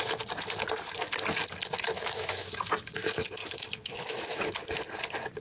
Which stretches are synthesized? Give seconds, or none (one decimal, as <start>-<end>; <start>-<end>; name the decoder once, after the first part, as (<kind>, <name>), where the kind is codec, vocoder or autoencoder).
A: 1.9-2.6 (autoencoder, DAC-VAE); 3.4-4.4

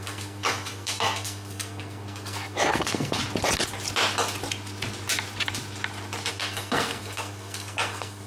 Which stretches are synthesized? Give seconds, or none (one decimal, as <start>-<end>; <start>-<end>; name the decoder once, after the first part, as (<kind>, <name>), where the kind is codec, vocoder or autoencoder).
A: 0.0-3.2 (codec, SNAC); 6.3-8.3

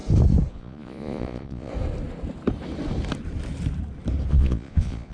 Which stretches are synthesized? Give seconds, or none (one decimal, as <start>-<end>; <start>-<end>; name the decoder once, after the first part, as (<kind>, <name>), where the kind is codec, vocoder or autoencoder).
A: 0.5-1.7 (vocoder, Vocos); 4.3-5.1

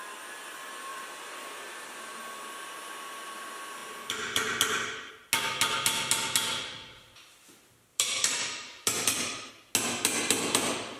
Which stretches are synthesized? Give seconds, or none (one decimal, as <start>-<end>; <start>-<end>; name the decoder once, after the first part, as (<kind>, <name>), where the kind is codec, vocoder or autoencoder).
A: 0.9-2.2 (vocoder, BigVGAN v2); 7.9-9.5

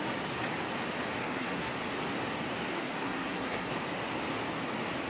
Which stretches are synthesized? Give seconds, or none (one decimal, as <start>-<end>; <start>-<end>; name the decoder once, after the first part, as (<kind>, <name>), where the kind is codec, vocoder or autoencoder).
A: 1.2-1.7 (codec, SNAC); 2.7-3.7